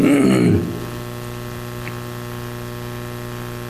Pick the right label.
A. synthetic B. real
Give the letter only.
B